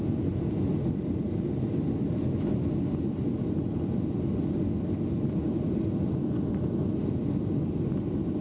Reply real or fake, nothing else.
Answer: real